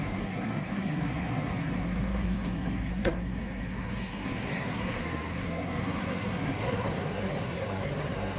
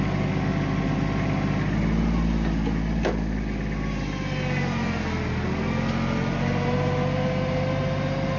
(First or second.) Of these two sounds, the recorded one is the second